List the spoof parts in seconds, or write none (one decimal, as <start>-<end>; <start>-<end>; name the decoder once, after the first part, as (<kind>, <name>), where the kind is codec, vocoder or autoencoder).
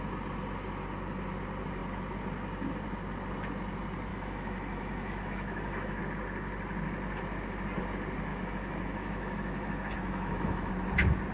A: 4.1-6.0 (autoencoder, DAC-VAE); 8.3-10.7